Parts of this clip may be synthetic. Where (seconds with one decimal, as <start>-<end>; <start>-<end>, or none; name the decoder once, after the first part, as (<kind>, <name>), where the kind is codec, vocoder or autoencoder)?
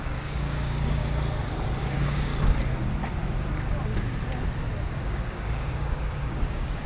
0.0-1.0 (codec, DAC); 1.8-2.3; 4.8-6.9